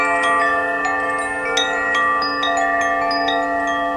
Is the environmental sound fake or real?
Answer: real